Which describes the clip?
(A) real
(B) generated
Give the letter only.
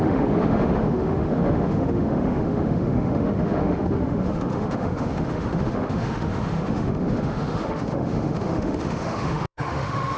B